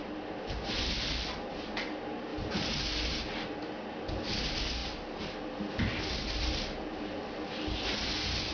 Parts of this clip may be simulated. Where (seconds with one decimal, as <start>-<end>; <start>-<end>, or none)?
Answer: 2.3-4.3